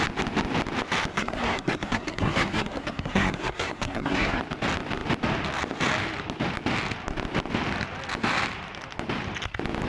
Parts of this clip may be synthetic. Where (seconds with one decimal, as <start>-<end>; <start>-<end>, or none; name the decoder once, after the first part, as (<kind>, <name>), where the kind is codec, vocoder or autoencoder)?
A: 1.1-4.4 (codec, SNAC)